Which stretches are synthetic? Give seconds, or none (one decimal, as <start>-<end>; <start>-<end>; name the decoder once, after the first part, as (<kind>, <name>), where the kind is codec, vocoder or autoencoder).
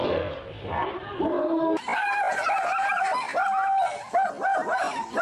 1.0-1.6 (vocoder, BigVGAN v2); 2.4-2.9